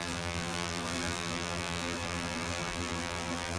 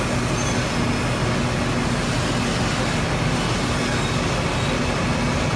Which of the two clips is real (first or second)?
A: second